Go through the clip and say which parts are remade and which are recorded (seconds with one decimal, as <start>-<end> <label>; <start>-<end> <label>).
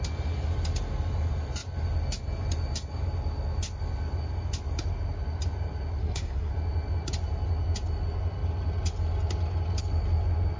0.0-6.0 recorded; 6.0-6.5 remade; 6.5-10.6 recorded